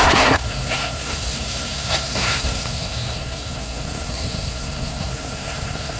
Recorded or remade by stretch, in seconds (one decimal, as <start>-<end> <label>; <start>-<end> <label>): 0.0-6.0 remade